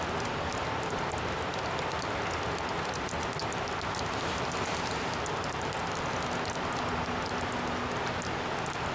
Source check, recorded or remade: recorded